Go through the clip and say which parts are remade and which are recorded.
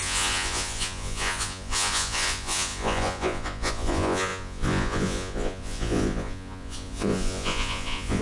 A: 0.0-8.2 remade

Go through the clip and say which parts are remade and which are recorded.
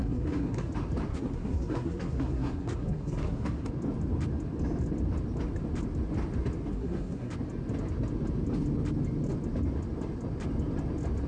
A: 0.0-0.7 remade; 0.7-1.1 recorded; 1.1-3.7 remade; 3.7-6.7 recorded; 6.7-7.3 remade; 7.3-11.3 recorded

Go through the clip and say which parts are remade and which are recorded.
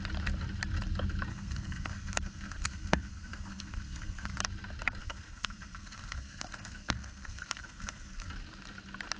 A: 0.0-1.3 recorded; 1.3-4.4 remade; 4.4-5.0 recorded; 5.0-8.3 remade; 8.3-9.2 recorded